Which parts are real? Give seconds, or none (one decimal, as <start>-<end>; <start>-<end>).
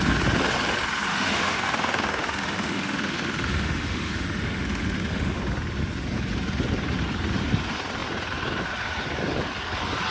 0.0-1.1; 5.4-10.1